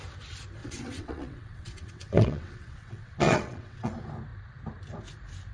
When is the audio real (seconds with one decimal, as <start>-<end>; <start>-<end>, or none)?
0.0-0.6; 3.9-5.5